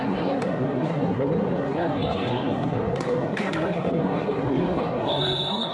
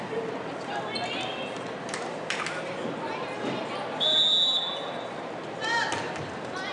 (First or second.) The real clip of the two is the second